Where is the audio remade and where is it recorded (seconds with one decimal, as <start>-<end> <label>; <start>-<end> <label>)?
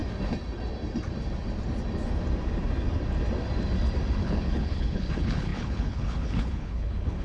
0.0-4.2 recorded; 4.2-7.2 remade